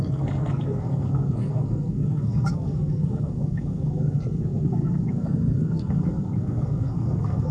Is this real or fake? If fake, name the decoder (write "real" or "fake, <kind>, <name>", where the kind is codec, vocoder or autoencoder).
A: fake, codec, SNAC